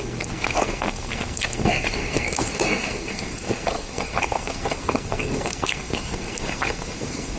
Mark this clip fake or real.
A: fake